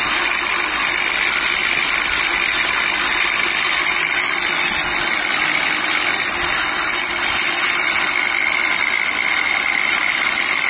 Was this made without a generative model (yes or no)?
yes